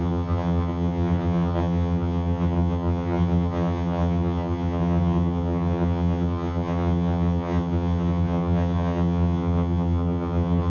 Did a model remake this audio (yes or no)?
yes